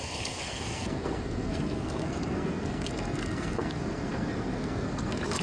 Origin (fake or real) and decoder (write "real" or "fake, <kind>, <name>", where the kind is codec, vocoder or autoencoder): fake, codec, SNAC